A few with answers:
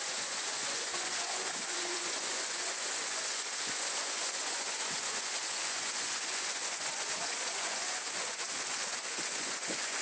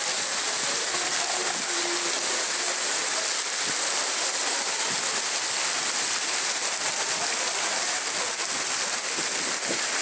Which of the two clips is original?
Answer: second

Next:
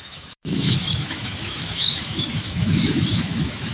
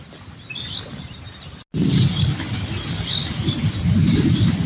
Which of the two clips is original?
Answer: second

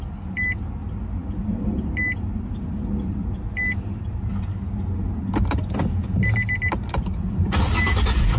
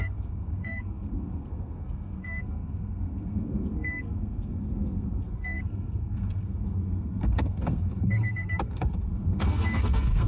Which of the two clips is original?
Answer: first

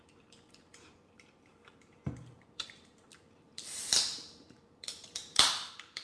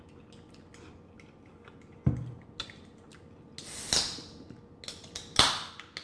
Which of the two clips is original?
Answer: second